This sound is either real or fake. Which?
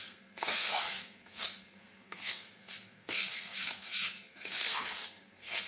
fake